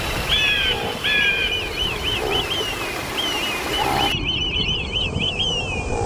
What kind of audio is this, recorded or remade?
remade